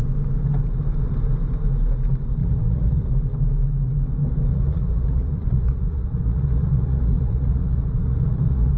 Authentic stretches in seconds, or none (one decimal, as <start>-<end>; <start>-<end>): 0.0-2.4; 3.1-4.5